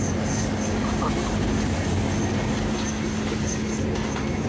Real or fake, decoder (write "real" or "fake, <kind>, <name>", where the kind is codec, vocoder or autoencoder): real